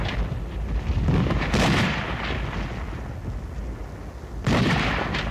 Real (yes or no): yes